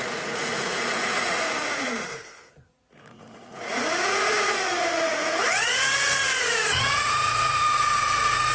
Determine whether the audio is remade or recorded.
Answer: remade